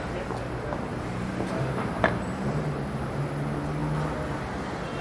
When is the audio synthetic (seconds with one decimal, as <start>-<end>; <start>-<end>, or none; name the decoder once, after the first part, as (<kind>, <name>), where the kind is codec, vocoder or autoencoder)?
0.9-2.0 (vocoder, BigVGAN v2)